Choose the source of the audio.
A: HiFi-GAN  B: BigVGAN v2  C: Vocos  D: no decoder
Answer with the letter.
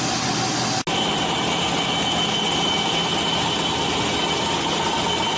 D